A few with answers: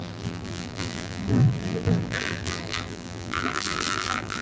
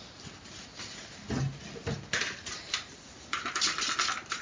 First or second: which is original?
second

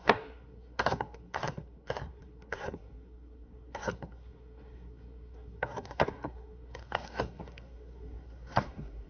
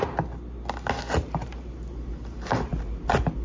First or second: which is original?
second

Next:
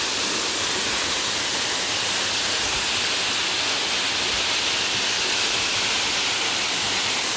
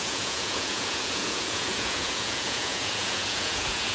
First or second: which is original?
first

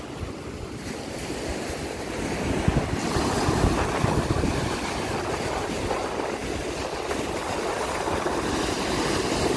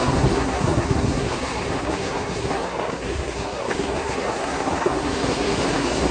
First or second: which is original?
first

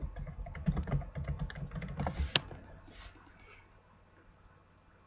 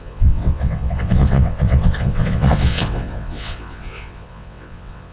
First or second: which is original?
first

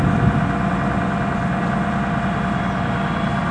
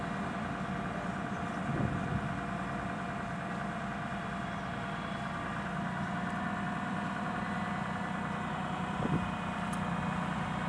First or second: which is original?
first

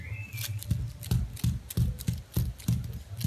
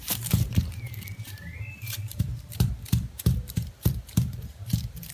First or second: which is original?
first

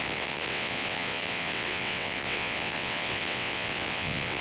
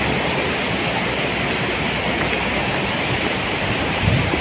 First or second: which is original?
second